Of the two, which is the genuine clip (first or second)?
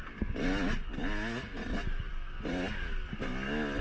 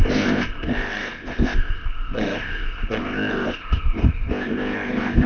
first